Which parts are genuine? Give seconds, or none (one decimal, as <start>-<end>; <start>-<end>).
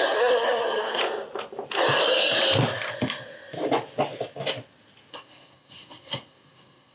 1.0-5.1